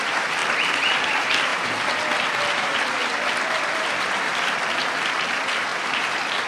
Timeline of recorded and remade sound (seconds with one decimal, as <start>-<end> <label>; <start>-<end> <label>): 0.0-0.4 recorded; 0.4-1.1 remade; 1.1-1.5 recorded; 1.5-5.3 remade; 5.3-5.7 recorded; 5.7-6.5 remade